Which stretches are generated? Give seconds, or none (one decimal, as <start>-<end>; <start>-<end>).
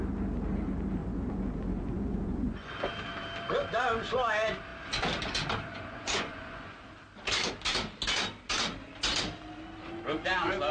1.0-2.7; 5.7-6.9